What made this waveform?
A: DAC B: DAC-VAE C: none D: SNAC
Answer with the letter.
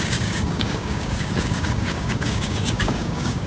A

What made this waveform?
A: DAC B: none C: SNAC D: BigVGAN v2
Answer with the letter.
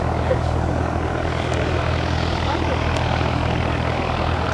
A